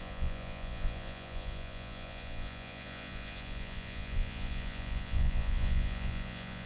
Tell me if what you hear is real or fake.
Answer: fake